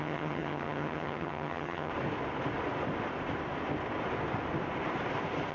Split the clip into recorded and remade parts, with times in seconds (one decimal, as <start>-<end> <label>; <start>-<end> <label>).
0.0-1.9 remade; 1.9-5.5 recorded